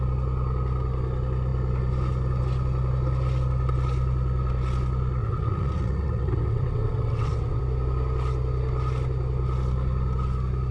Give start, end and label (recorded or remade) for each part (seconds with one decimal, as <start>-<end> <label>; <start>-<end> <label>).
0.0-5.2 recorded; 5.2-7.6 remade; 7.6-10.7 recorded